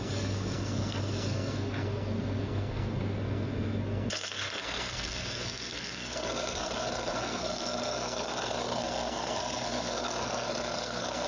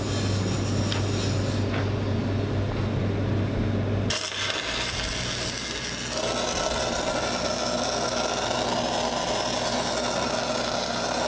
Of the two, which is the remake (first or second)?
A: first